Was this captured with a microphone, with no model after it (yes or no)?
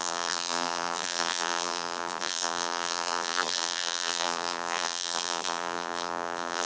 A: no